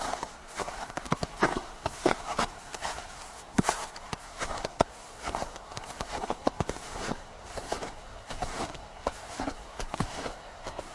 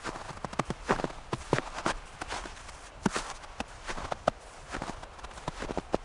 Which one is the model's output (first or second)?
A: first